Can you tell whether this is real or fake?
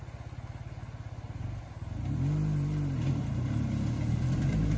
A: real